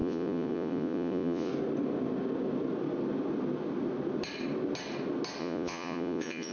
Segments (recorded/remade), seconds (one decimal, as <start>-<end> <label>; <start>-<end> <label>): 0.0-1.5 remade; 1.5-5.4 recorded; 5.4-6.5 remade